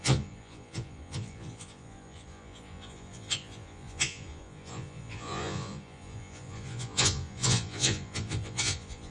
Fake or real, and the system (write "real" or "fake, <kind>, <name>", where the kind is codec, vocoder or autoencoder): fake, vocoder, Vocos